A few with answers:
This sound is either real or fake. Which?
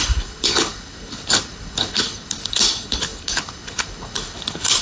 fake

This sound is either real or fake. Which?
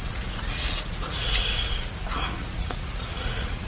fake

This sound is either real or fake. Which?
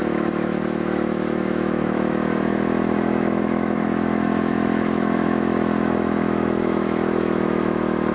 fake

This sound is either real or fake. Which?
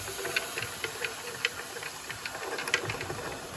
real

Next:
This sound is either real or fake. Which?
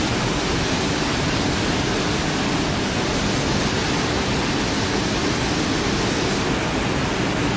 real